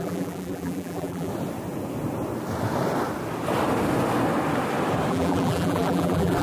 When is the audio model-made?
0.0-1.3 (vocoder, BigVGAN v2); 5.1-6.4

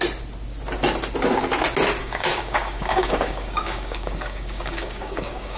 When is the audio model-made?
2.0-5.6 (codec, DAC)

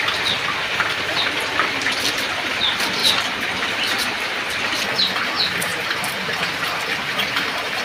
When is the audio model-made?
3.0-4.8 (vocoder, BigVGAN v2); 5.7-7.8

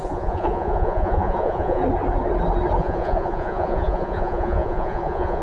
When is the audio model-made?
0.0-1.8 (vocoder, Vocos); 2.8-5.4

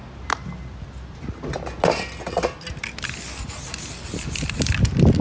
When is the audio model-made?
none

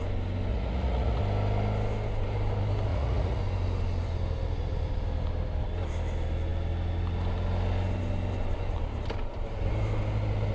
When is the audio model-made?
0.5-1.2 (vocoder, Vocos); 2.9-3.4

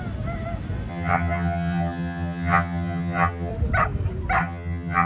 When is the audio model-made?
0.9-3.5 (vocoder, HiFi-GAN); 4.4-5.1

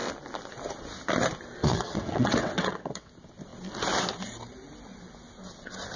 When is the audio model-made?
1.6-3.1 (vocoder, WaveNeXt)